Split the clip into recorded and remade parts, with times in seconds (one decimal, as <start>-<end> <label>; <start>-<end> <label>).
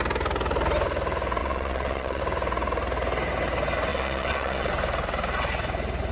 0.0-1.4 recorded; 1.4-2.2 remade; 2.2-3.9 recorded; 3.9-4.7 remade; 4.7-6.1 recorded